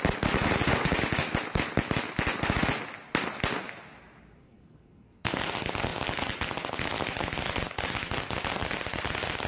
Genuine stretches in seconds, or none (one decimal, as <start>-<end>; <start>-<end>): 0.0-4.4; 5.4-9.5